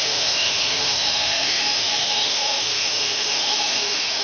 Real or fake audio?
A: fake